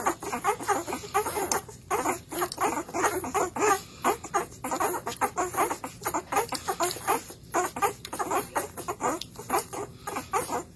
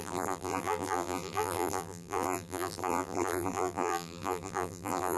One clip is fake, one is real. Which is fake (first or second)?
second